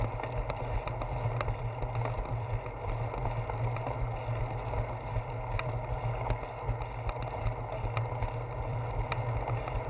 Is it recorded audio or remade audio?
recorded